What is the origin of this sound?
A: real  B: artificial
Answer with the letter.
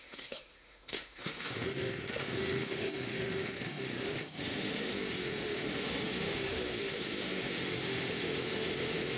B